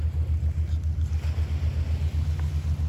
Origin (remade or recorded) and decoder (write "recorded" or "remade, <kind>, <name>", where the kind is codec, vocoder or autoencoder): recorded